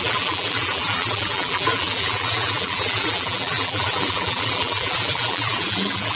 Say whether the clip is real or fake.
fake